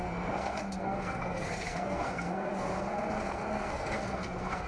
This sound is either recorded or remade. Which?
remade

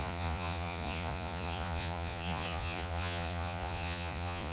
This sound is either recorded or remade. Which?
remade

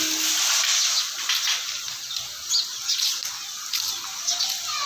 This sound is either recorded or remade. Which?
recorded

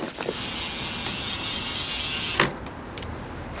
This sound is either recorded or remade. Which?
recorded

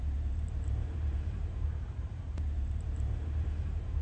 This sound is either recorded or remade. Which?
remade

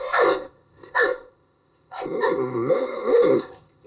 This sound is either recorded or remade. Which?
remade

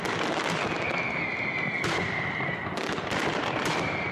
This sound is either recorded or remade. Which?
recorded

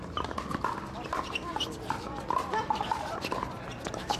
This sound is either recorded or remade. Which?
recorded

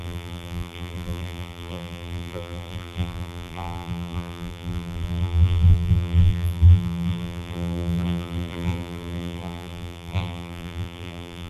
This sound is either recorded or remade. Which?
remade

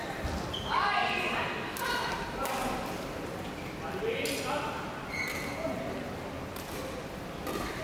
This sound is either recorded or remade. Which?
recorded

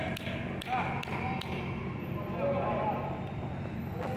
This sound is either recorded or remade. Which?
recorded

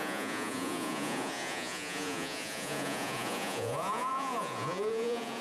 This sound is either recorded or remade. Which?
remade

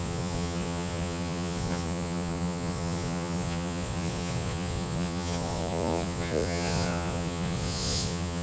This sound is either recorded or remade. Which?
remade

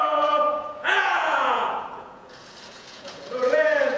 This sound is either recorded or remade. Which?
remade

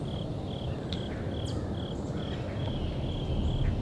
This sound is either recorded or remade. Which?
recorded